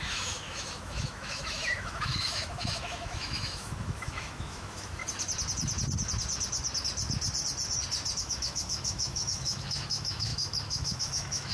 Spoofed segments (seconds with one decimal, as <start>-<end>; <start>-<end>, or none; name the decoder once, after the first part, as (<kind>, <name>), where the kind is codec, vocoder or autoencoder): 0.0-5.0 (autoencoder, DAC-VAE); 8.2-11.5